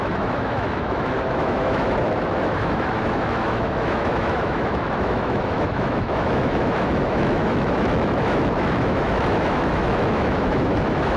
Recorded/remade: remade